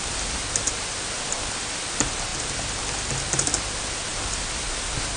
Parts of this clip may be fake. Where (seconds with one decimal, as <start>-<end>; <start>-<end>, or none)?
none